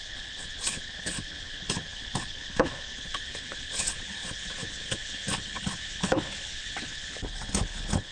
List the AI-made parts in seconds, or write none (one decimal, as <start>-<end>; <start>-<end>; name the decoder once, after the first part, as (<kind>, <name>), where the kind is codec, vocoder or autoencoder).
0.0-8.1 (codec, HILCodec)